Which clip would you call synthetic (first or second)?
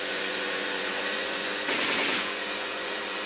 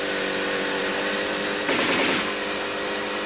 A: first